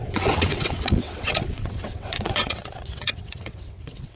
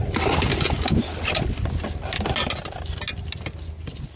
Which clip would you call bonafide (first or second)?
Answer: second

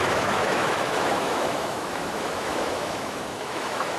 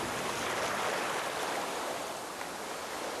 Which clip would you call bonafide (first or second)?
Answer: second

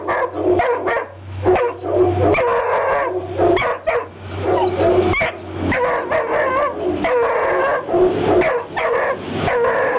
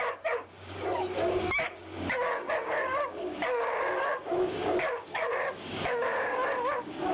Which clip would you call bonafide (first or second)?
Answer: first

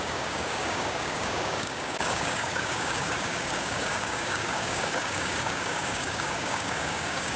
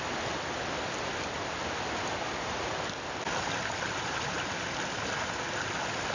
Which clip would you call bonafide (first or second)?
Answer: second